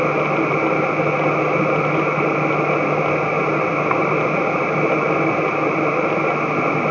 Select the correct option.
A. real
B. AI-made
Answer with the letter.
A